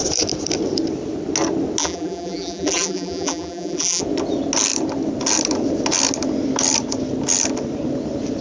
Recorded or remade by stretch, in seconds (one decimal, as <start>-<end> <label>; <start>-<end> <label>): 0.0-1.8 recorded; 1.8-4.0 remade; 4.0-8.4 recorded